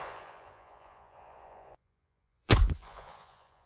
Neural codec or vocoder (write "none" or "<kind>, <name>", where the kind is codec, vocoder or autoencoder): vocoder, Vocos